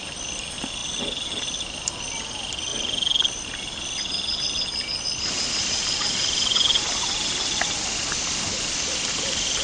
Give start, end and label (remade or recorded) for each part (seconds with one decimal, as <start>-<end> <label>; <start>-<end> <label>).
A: 0.0-9.6 recorded

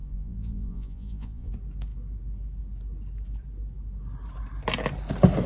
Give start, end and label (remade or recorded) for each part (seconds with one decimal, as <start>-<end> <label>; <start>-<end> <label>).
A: 0.0-1.5 remade; 1.5-5.5 recorded